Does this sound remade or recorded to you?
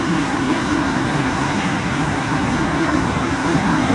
remade